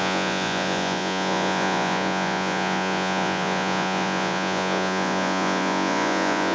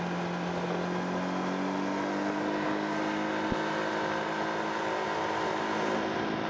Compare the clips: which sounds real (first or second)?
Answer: second